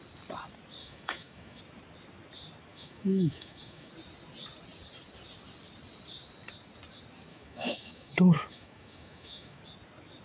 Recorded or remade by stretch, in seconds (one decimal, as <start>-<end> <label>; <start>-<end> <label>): 0.0-0.8 recorded; 0.8-1.6 remade; 1.6-2.7 recorded; 2.7-3.9 remade; 3.9-7.3 recorded; 7.3-9.6 remade; 9.6-10.2 recorded